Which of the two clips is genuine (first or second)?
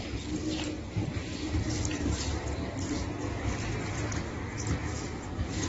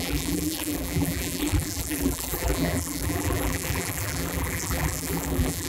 first